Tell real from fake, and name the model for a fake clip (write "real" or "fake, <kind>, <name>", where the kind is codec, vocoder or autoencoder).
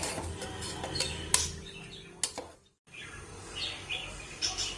real